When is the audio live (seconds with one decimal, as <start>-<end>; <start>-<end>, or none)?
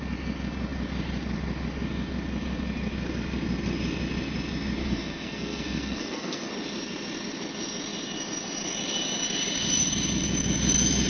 0.0-4.8; 6.5-11.1